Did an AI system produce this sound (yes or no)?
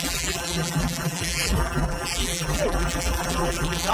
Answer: yes